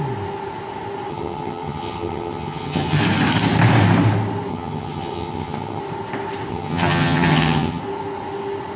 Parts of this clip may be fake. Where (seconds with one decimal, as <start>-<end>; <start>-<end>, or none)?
1.1-3.0; 4.5-5.8; 6.5-7.8

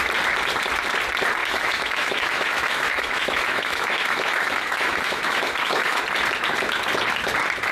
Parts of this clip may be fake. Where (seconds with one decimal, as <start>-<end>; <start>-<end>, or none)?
1.4-6.0

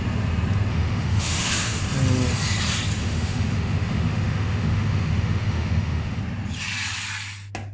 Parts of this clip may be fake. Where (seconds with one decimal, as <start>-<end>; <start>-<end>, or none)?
0.7-1.8; 3.0-6.2

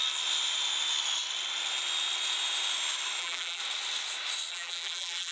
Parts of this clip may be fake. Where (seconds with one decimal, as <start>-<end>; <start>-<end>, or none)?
3.2-3.6; 4.5-5.3

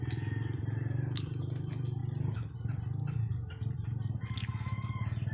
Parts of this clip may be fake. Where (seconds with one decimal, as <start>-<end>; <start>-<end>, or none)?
0.0-2.0; 4.2-5.3